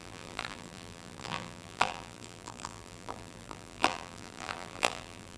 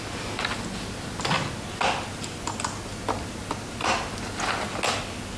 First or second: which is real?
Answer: second